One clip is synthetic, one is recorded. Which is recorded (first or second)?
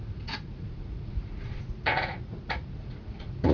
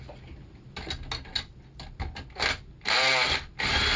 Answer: second